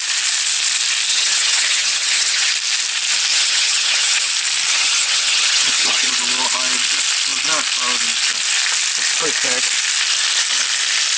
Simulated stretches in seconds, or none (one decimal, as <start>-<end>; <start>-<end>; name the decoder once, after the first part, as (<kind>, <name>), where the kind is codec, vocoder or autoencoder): 1.1-2.5 (vocoder, HiFi-GAN); 3.3-4.3; 4.7-6.1

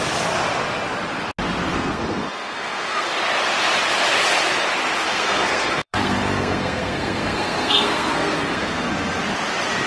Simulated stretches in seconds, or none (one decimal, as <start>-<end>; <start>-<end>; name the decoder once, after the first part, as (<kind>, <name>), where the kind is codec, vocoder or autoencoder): 1.7-3.1 (codec, SNAC); 5.1-9.2

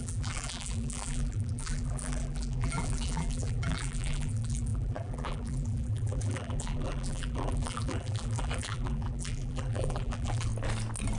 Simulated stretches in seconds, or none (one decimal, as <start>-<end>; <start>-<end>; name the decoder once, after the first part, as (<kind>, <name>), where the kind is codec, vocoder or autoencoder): 0.0-10.5 (vocoder, BigVGAN v2)